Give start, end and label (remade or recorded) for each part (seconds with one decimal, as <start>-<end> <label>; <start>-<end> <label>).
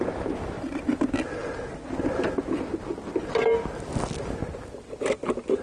0.0-5.6 recorded